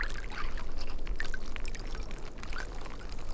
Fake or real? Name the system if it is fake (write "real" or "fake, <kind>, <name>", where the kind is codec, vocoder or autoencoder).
real